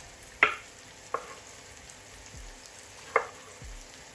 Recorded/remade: recorded